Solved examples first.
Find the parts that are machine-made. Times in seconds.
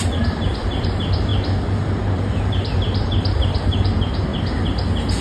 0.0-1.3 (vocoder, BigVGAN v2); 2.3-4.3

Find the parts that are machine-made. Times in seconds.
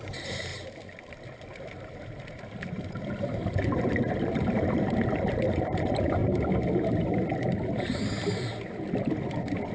0.0-0.5 (vocoder, BigVGAN v2); 1.6-6.2; 9.1-9.7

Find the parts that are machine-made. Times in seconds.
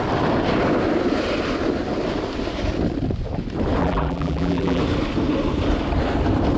3.8-4.8 (vocoder, BigVGAN v2)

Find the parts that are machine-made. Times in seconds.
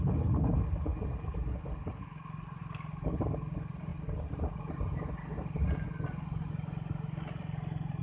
2.6-3.1 (vocoder, BigVGAN v2)